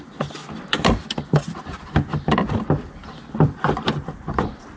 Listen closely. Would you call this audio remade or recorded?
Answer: remade